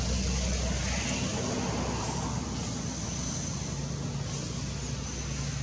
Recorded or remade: recorded